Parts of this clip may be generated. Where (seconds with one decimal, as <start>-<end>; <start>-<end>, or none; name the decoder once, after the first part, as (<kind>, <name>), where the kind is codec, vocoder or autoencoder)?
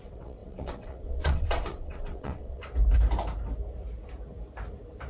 0.0-2.6 (vocoder, WaveNeXt)